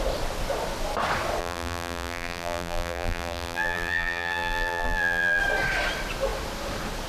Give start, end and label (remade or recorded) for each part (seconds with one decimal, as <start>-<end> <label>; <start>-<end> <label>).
0.0-1.4 recorded; 1.4-5.4 remade; 5.4-7.1 recorded